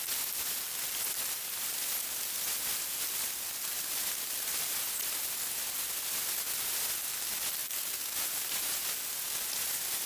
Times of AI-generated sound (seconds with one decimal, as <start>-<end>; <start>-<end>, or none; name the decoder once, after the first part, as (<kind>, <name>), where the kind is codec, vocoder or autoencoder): none